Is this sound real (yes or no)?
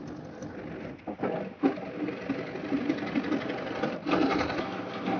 yes